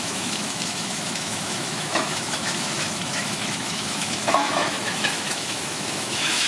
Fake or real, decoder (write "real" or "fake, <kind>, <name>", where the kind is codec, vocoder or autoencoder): fake, autoencoder, DAC-VAE